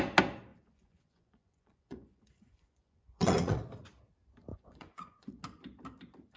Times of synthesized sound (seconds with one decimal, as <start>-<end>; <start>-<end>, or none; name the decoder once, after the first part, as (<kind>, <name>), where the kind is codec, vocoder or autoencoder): 0.5-3.6 (vocoder, Vocos); 4.5-5.4